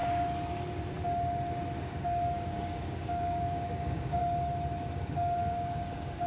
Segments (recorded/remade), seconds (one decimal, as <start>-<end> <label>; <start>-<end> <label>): 0.0-1.8 recorded; 1.8-4.2 remade; 4.2-4.9 recorded; 4.9-6.3 remade